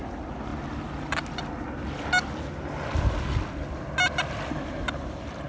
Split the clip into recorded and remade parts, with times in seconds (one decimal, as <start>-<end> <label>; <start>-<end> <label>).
0.0-5.5 recorded